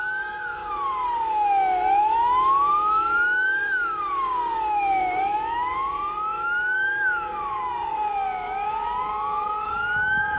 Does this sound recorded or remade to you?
remade